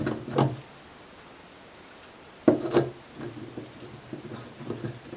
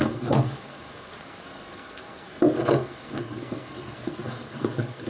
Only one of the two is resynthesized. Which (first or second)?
second